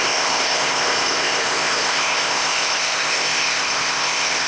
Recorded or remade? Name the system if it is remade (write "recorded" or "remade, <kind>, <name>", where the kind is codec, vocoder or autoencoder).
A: remade, codec, ZipCodec